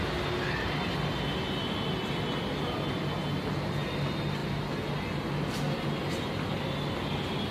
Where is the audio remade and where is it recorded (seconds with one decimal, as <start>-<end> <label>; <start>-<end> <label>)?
0.0-7.5 recorded